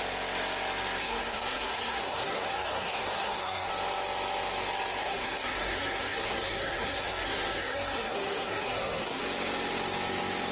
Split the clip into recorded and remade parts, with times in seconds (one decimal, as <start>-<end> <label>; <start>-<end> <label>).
0.0-1.0 recorded; 1.0-3.7 remade; 3.7-5.0 recorded; 5.0-9.2 remade; 9.2-10.5 recorded